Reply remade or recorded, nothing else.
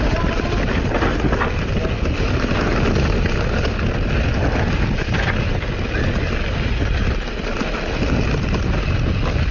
recorded